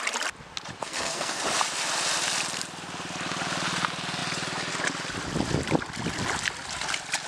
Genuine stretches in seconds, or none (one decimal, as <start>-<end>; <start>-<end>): 0.0-0.8; 1.4-7.3